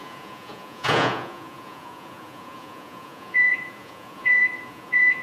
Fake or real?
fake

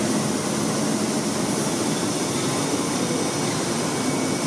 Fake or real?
real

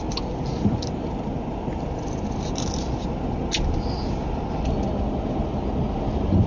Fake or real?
real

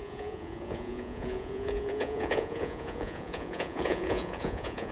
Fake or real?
fake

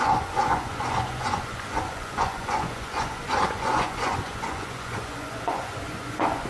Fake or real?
fake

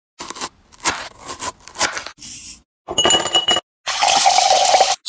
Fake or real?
real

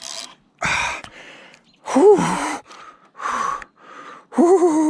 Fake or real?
real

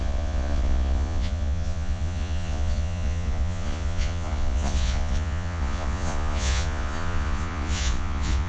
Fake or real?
fake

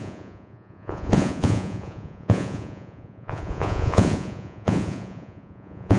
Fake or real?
fake